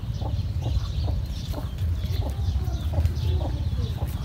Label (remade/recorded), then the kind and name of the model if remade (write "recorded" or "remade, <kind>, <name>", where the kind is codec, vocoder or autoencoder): recorded